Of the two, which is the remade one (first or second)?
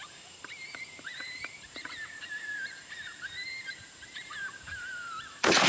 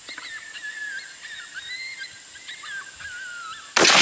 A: first